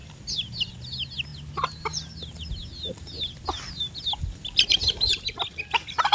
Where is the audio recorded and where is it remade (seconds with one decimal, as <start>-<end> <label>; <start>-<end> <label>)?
0.0-6.1 recorded